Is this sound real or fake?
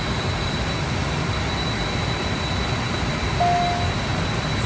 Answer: real